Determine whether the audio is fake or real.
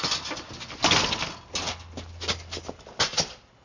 real